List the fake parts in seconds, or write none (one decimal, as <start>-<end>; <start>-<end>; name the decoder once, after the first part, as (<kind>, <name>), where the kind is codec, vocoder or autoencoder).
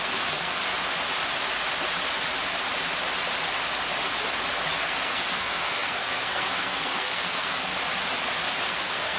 0.0-0.6 (codec, SNAC); 4.8-7.7; 8.6-9.2